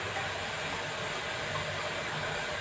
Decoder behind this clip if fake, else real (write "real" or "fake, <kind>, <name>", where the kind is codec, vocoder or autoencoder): real